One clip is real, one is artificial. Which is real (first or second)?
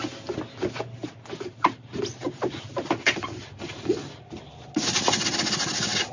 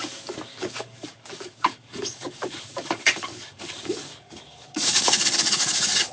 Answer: first